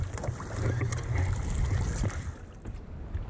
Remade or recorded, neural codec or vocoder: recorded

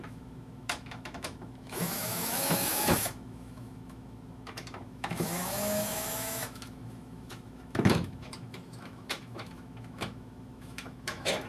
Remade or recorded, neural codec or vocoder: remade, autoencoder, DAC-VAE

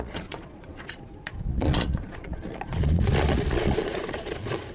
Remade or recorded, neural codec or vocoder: remade, vocoder, Vocos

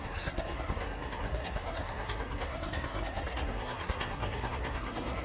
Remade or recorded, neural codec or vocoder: remade, codec, SNAC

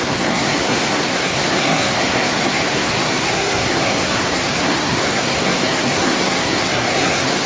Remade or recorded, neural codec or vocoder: remade, codec, SNAC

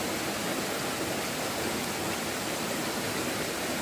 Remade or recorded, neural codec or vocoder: recorded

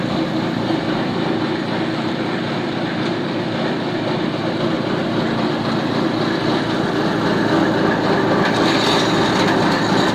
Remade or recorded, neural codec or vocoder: recorded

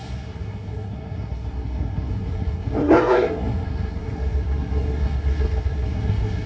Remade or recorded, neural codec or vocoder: remade, codec, SNAC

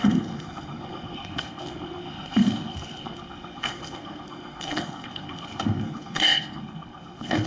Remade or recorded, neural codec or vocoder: remade, codec, SNAC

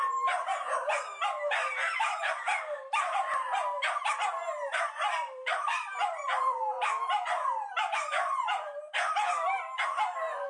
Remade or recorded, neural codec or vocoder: remade, vocoder, BigVGAN v2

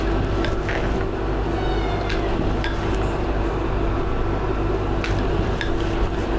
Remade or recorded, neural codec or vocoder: recorded